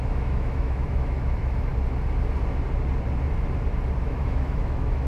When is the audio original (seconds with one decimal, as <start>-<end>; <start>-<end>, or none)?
1.7-4.0